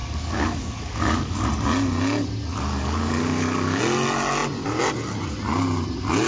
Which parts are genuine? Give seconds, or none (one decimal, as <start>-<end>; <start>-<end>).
1.5-2.5; 3.8-6.3